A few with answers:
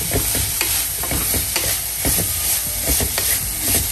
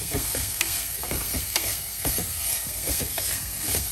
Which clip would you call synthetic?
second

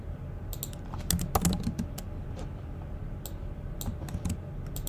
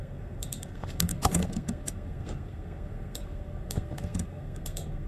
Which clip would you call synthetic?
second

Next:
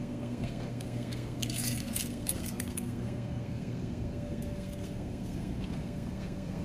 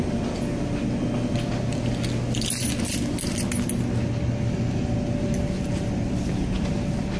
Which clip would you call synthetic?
first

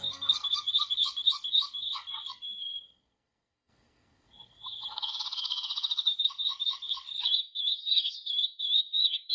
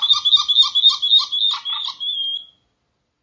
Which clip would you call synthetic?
first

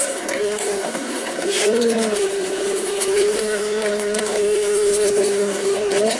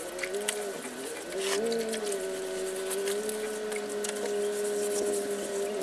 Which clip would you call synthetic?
first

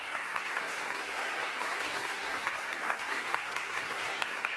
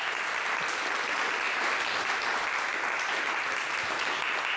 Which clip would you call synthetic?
first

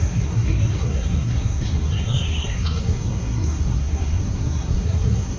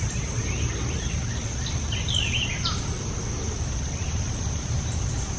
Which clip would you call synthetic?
first